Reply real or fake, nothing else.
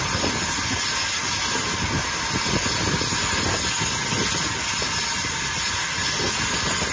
real